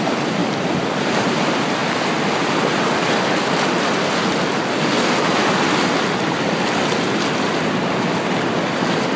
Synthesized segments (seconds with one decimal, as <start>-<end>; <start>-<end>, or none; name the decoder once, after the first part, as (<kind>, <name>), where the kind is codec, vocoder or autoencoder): none